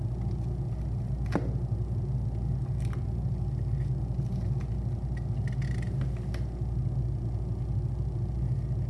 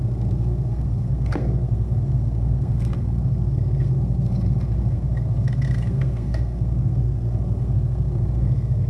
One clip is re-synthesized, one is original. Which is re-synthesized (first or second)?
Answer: second